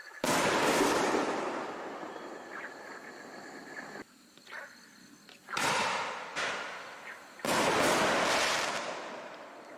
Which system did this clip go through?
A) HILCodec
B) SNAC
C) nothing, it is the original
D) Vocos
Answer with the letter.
C